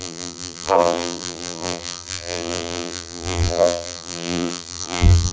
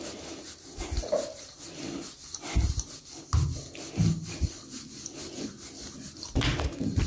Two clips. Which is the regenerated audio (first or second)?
first